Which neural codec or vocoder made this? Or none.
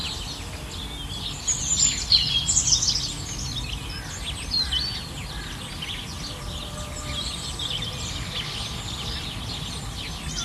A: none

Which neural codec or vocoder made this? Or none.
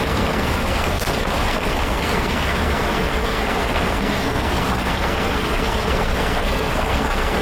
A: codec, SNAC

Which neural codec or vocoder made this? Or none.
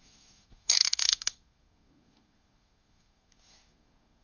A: codec, SNAC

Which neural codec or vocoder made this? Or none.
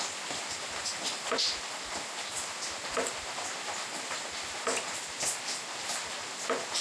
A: none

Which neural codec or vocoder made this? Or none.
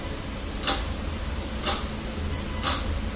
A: none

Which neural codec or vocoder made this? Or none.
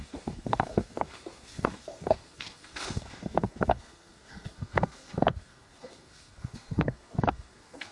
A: codec, SNAC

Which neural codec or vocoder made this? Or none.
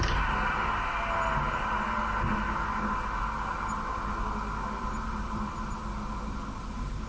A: none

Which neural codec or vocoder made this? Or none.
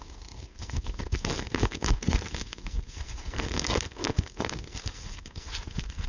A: codec, SNAC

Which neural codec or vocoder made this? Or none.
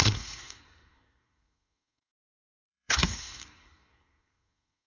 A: codec, SNAC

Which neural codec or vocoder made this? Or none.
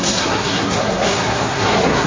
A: codec, SNAC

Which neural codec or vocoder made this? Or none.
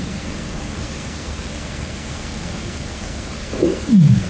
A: codec, SNAC